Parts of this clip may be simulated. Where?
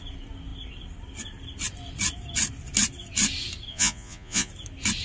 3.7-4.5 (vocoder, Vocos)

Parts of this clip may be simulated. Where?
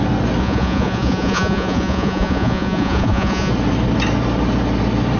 0.4-3.5 (vocoder, Vocos)